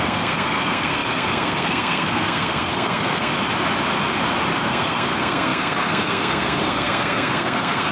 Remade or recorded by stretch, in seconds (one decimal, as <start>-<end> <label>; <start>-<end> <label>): 0.0-3.3 remade; 3.3-4.6 recorded; 4.6-7.9 remade